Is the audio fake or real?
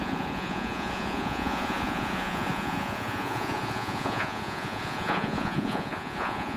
fake